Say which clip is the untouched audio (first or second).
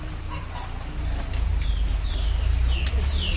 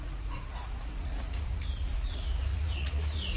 first